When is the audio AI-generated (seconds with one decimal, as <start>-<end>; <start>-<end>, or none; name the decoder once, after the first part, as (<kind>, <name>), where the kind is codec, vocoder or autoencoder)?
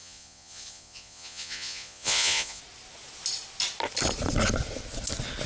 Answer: 0.0-2.6 (vocoder, Vocos)